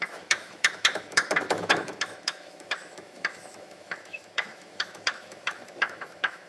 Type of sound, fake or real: fake